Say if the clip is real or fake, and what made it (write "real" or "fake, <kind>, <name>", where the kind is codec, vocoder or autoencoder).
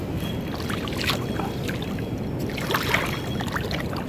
real